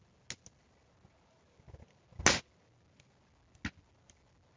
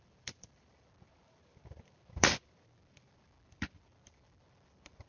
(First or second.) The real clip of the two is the first